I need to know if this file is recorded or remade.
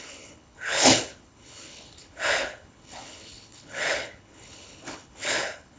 remade